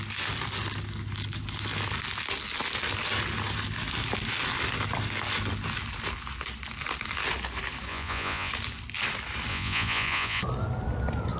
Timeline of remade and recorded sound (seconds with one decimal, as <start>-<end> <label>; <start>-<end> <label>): 0.0-7.9 recorded; 7.9-8.5 remade; 8.5-9.5 recorded; 9.5-10.4 remade; 10.4-11.4 recorded